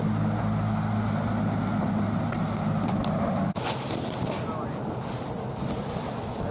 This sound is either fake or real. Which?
real